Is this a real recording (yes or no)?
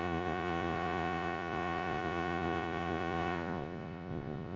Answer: no